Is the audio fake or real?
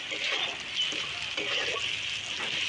real